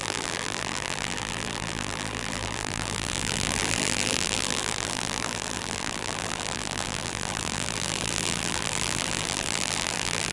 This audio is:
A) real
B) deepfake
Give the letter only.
B